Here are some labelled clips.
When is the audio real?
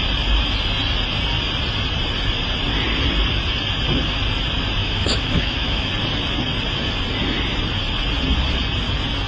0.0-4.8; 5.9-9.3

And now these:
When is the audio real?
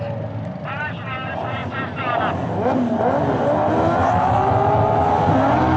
0.0-5.8